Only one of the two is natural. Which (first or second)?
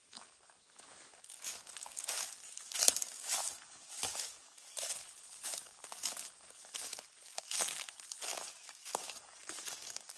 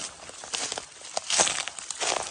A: second